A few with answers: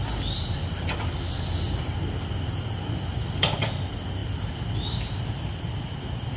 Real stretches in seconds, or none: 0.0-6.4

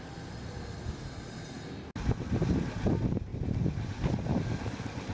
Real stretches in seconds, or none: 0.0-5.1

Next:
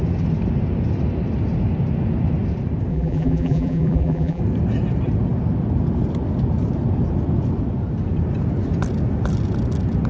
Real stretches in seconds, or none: 0.0-2.9; 4.4-10.1